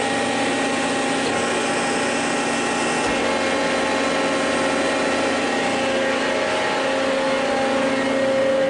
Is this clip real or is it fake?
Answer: real